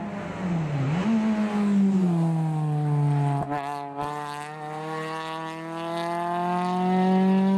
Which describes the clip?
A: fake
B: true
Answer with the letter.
B